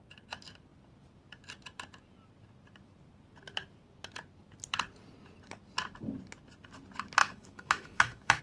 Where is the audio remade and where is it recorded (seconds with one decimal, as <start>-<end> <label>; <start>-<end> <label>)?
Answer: 0.0-7.2 recorded; 7.2-8.4 remade